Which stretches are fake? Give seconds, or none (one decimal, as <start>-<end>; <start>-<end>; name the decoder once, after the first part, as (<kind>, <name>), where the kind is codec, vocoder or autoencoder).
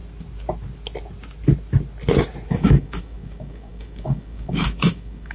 2.5-5.3 (codec, DAC)